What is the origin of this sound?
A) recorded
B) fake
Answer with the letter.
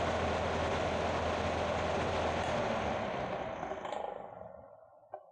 A